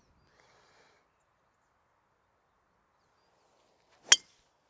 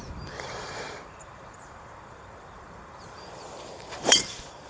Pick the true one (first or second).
first